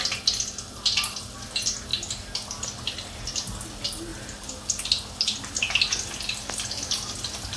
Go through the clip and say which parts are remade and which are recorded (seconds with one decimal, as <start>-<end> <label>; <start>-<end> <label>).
0.0-7.6 recorded